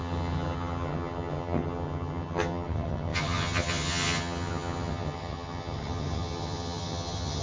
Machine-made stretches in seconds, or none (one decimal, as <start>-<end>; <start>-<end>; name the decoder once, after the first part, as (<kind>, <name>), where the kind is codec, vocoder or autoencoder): 0.0-7.4 (vocoder, HiFi-GAN)